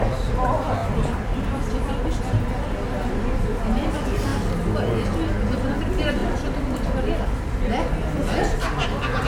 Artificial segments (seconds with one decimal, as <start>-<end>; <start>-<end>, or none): 0.8-2.2; 6.2-7.9